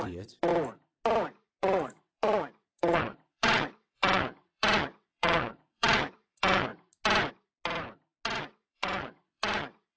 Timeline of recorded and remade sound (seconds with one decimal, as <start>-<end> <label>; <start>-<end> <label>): 0.0-0.5 remade; 0.5-1.6 recorded; 1.6-6.7 remade; 6.7-8.4 recorded; 8.4-10.0 remade